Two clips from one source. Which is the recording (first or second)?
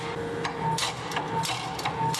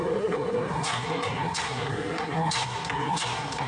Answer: first